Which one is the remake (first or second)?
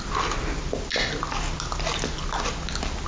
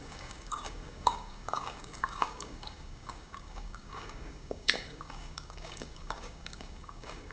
second